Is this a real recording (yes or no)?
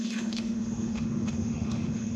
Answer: no